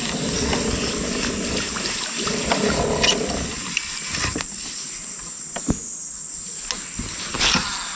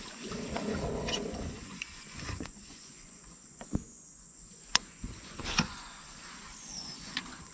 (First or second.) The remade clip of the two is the second